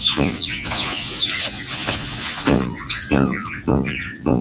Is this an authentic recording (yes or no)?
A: no